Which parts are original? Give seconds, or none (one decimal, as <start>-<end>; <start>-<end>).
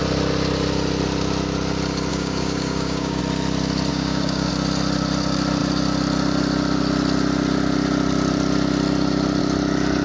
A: 0.0-2.1; 3.2-3.9; 4.5-10.0